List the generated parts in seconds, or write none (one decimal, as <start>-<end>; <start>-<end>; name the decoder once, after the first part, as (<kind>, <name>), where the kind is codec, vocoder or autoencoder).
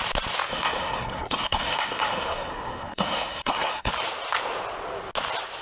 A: 0.5-3.9 (codec, SNAC)